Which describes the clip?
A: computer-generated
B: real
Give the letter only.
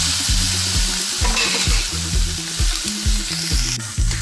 B